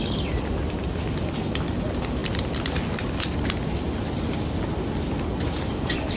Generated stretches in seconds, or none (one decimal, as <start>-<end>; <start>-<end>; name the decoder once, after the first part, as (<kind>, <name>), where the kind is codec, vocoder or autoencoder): none